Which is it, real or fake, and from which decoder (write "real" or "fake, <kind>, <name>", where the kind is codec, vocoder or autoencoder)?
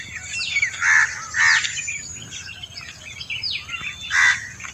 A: real